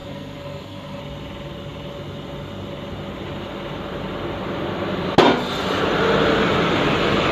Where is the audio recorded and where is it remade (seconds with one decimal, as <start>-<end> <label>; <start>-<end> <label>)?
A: 0.0-1.0 remade; 1.0-7.3 recorded